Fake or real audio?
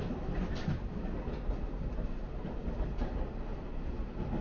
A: real